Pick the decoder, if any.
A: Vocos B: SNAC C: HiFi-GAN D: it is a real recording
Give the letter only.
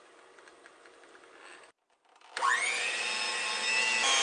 D